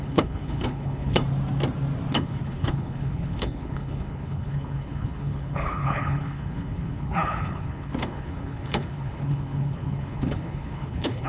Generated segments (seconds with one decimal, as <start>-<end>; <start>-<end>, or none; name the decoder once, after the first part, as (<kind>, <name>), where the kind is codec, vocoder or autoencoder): 0.0-1.2 (codec, HILCodec); 2.1-11.3